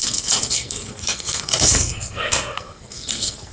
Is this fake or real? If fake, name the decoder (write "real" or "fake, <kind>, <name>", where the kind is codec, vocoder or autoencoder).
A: fake, codec, SNAC